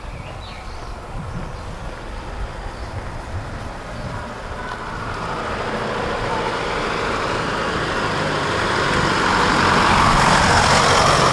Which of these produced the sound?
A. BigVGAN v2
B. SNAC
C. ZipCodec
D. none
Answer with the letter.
D